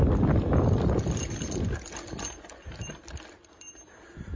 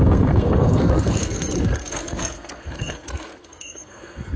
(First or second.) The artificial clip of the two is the second